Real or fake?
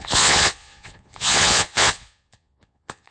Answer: fake